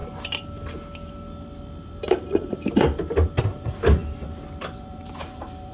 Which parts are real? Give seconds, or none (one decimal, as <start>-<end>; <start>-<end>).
0.0-3.4; 4.0-4.6